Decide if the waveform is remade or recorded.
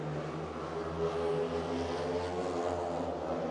recorded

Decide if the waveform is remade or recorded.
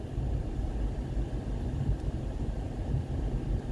recorded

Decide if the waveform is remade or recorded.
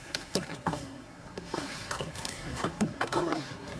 remade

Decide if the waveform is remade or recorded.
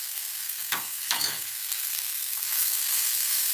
remade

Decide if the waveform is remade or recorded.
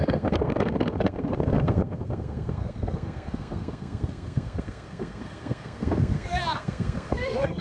remade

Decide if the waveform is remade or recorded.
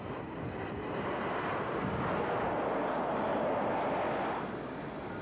recorded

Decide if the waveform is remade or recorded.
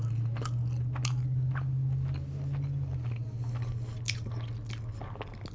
recorded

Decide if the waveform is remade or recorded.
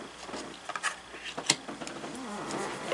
recorded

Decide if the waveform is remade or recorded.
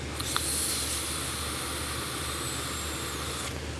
recorded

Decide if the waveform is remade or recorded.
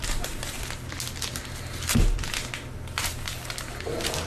recorded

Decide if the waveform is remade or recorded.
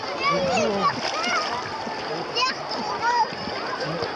recorded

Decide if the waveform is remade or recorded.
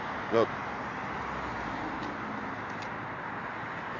recorded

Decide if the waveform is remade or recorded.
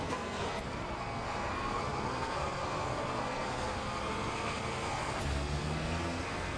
remade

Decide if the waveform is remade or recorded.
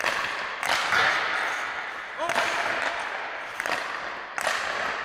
recorded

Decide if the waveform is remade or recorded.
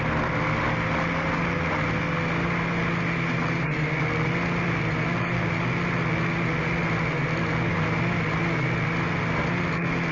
recorded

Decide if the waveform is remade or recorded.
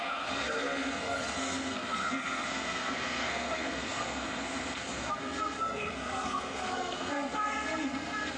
remade